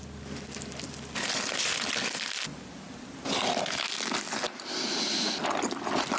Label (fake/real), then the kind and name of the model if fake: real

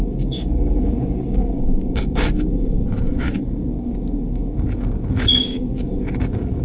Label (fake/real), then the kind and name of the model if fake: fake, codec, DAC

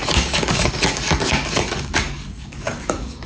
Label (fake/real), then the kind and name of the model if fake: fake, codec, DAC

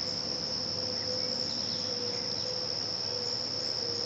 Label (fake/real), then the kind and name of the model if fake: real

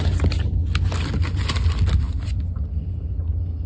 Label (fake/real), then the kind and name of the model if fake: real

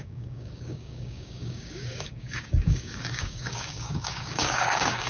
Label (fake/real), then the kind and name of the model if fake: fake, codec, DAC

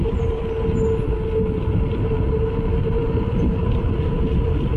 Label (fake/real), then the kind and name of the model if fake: real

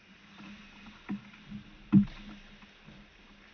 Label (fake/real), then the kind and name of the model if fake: real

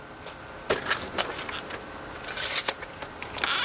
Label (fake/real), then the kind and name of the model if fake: real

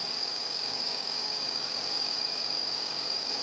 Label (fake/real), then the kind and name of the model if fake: fake, codec, DAC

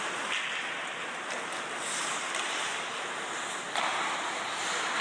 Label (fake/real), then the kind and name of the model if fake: real